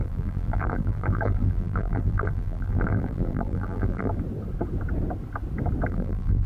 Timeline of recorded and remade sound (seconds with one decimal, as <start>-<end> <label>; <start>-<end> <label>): 0.0-4.1 remade; 4.1-5.9 recorded; 5.9-6.5 remade